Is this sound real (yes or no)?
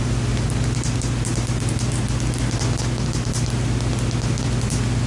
yes